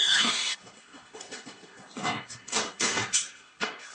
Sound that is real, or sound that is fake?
fake